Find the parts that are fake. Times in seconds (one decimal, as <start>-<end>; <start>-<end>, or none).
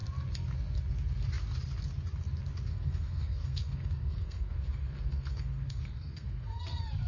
2.7-7.1